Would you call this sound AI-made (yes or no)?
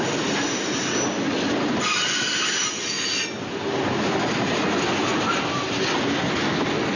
no